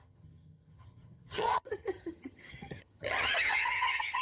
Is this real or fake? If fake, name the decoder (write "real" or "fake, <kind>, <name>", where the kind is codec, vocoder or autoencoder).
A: fake, vocoder, HiFi-GAN